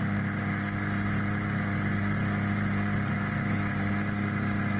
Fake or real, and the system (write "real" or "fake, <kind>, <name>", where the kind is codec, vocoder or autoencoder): real